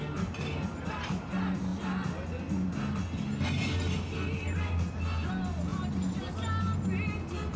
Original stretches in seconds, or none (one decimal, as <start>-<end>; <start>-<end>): 0.0-7.6